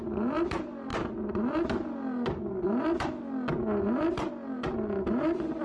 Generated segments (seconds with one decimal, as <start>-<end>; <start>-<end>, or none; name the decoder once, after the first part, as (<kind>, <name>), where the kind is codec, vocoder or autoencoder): none